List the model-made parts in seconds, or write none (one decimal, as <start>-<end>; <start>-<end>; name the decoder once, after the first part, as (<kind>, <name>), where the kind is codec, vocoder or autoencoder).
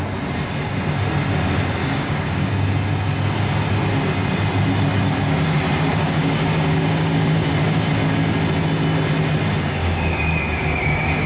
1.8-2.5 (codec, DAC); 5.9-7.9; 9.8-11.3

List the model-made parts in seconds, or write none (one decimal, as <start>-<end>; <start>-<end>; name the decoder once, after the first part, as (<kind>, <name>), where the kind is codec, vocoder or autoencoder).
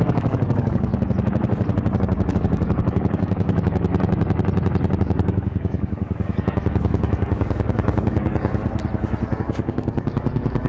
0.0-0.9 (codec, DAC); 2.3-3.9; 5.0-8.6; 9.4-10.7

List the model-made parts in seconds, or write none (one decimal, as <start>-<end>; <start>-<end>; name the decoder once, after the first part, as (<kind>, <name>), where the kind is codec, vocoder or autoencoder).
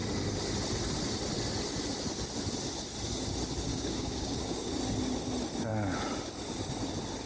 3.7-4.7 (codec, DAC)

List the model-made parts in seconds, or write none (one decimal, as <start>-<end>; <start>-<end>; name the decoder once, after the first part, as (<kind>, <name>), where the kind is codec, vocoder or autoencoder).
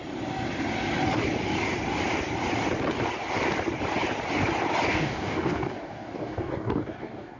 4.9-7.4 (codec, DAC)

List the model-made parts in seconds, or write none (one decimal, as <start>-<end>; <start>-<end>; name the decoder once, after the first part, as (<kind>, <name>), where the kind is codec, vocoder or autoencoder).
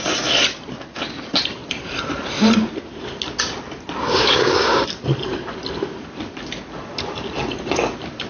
4.0-4.9 (codec, DAC)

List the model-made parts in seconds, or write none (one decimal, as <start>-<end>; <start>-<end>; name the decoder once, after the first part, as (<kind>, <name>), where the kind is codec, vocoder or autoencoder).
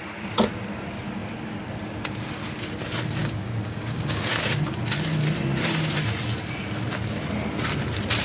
3.2-4.3 (codec, DAC)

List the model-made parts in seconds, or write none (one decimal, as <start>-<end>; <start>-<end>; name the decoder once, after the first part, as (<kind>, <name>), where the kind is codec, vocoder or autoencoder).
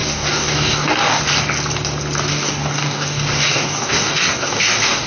0.0-1.2 (codec, DAC); 2.3-5.1